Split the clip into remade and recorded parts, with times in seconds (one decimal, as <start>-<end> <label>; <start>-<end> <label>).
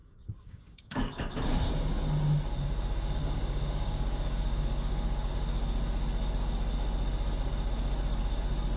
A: 0.0-1.7 remade; 1.7-3.2 recorded; 3.2-5.3 remade; 5.3-8.8 recorded